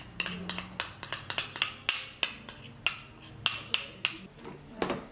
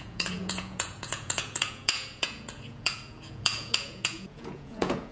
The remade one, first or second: second